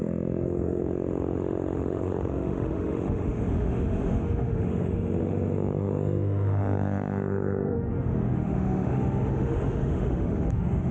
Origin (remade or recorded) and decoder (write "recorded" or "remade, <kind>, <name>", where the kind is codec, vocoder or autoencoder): remade, autoencoder, DAC-VAE